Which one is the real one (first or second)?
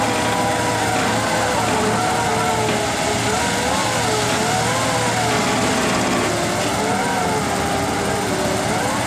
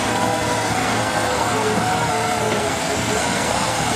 first